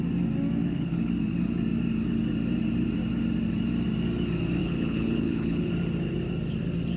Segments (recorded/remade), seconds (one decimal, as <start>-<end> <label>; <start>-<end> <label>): 0.0-0.6 recorded; 0.6-1.1 remade; 1.1-4.6 recorded; 4.6-5.7 remade; 5.7-7.0 recorded